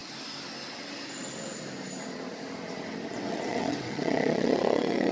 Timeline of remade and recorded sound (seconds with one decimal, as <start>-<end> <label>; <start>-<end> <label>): 0.0-3.1 recorded; 3.1-5.1 remade